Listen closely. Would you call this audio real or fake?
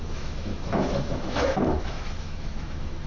fake